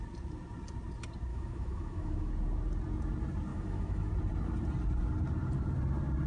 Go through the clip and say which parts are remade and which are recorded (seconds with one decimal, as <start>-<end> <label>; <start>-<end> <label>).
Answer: 0.0-1.3 recorded; 1.3-2.3 remade; 2.3-3.5 recorded; 3.5-4.1 remade; 4.1-6.3 recorded